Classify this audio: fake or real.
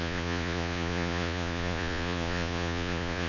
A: fake